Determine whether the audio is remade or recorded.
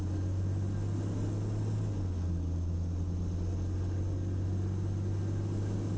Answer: recorded